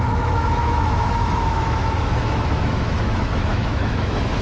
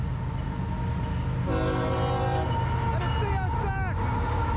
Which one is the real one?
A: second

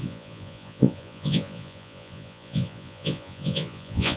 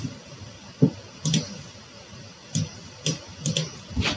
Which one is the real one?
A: second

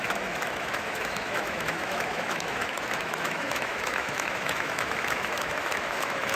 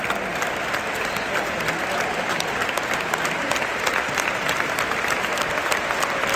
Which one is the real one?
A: second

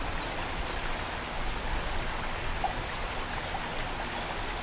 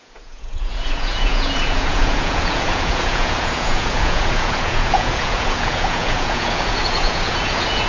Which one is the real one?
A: first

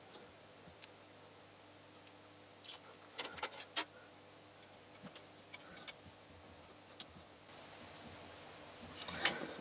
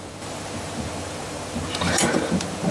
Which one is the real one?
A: first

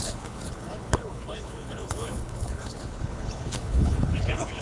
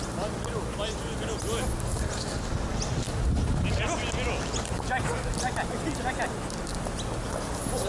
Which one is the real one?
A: second